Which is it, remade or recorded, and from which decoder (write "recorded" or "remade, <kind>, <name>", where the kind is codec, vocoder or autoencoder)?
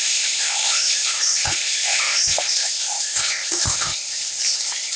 remade, codec, ZipCodec